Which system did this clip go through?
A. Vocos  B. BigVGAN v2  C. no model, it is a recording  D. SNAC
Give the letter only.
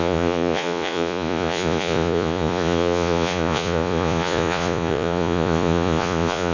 A